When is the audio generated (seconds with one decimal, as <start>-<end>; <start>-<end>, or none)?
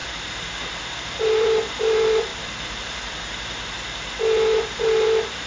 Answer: 0.0-5.5